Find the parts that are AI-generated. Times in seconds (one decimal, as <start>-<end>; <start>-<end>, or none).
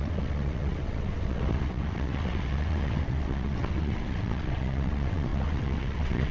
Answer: 0.0-6.3